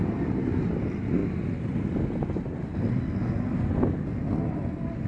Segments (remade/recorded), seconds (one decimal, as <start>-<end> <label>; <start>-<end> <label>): 0.0-5.1 recorded